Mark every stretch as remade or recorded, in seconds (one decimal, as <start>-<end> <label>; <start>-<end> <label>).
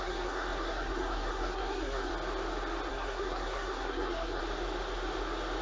0.0-2.1 remade; 2.1-2.9 recorded; 2.9-4.4 remade; 4.4-5.6 recorded